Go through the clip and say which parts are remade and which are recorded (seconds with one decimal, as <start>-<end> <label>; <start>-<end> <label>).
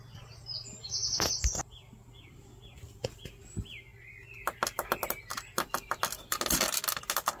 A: 0.0-7.4 recorded